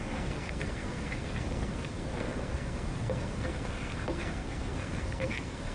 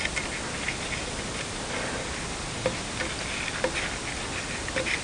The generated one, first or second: first